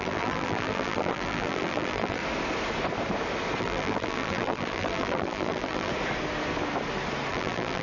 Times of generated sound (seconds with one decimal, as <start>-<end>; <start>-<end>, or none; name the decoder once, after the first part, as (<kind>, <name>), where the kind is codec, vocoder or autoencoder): 0.0-2.2 (vocoder, BigVGAN v2); 3.6-5.9; 7.3-7.8